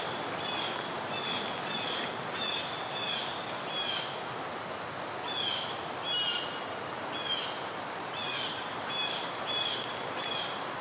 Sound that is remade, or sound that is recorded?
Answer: recorded